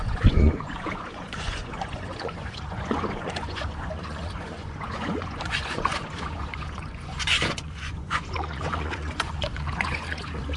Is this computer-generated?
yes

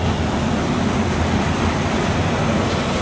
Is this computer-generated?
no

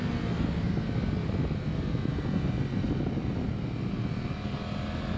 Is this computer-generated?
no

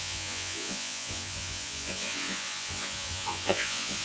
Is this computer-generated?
yes